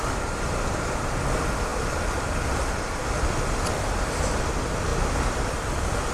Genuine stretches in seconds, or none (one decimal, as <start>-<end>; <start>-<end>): 0.0-6.1